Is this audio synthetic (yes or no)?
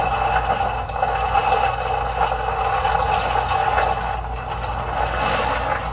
no